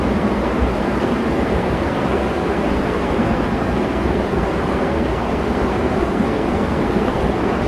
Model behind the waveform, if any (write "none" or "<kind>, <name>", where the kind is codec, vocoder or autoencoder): codec, SNAC